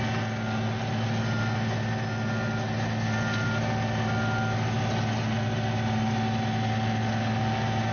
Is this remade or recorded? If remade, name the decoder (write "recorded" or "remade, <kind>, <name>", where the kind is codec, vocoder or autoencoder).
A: recorded